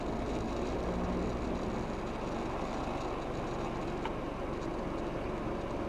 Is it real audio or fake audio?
real